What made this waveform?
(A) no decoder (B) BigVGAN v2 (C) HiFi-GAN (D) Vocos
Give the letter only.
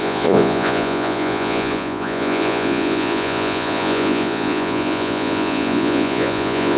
D